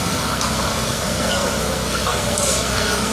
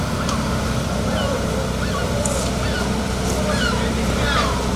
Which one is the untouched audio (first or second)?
second